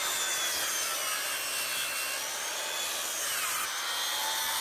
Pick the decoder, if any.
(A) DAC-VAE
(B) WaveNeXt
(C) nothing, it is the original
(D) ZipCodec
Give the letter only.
C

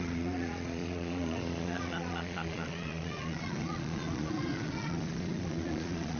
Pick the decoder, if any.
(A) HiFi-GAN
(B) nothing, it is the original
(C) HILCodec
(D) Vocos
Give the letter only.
D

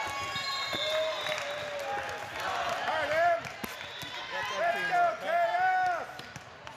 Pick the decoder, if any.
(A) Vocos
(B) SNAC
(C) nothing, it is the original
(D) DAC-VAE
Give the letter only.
C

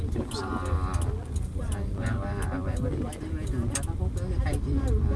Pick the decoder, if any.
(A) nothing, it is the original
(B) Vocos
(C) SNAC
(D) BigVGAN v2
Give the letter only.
A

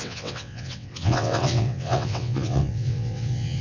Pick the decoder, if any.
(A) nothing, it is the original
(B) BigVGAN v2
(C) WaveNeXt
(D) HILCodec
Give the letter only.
C